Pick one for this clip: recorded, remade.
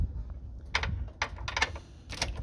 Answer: recorded